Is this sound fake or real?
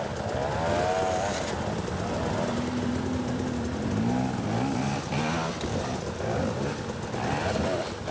real